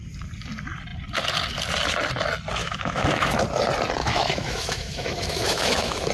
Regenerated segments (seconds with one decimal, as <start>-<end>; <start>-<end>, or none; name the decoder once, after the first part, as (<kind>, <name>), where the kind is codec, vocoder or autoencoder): 2.6-3.4 (autoencoder, DAC-VAE); 4.0-6.1